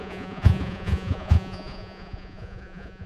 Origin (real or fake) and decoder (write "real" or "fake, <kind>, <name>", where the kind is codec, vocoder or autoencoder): fake, vocoder, Vocos